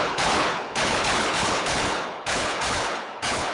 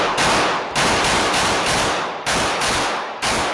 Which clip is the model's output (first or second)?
first